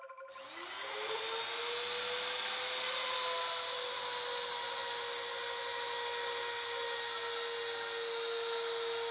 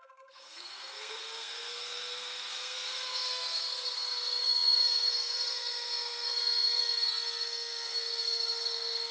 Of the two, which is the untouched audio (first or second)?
first